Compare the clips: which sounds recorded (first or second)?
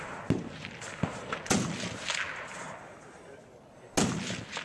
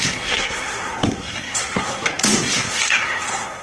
first